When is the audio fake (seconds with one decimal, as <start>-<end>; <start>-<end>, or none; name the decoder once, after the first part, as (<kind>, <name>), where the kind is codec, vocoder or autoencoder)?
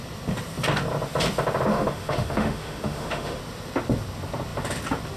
1.7-3.4 (autoencoder, DAC-VAE)